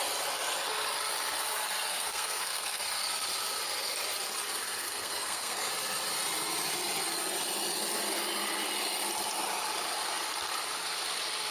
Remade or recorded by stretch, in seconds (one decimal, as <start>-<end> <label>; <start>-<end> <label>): 0.0-1.9 recorded; 1.9-2.8 remade; 2.8-4.8 recorded; 4.8-5.7 remade; 5.7-11.5 recorded